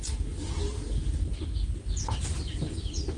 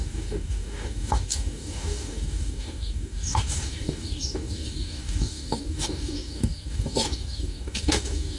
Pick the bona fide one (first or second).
first